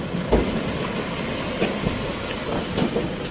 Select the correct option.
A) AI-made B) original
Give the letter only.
B